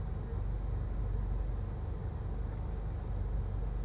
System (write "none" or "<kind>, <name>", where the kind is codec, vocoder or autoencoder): none